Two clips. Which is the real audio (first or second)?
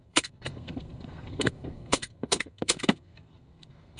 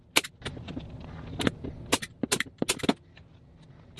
second